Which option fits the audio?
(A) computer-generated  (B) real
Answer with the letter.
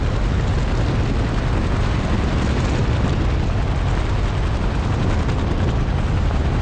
B